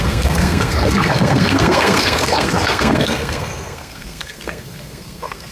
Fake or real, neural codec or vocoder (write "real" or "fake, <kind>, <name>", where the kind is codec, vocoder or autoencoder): fake, codec, SNAC